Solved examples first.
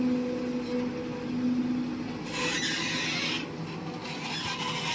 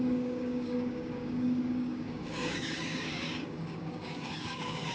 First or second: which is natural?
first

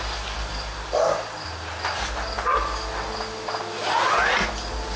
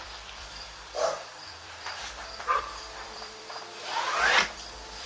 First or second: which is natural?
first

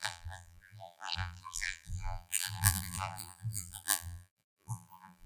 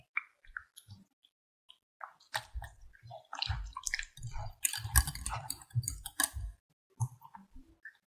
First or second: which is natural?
second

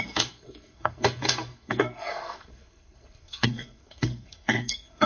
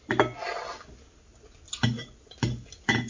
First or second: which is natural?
second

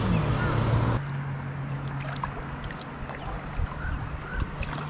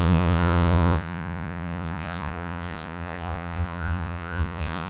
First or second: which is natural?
first